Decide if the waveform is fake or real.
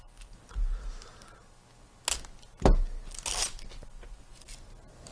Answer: real